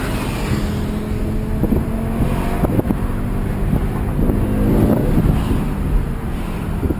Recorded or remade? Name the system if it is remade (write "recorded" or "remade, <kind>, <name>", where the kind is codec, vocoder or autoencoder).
recorded